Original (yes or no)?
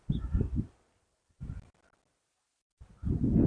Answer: yes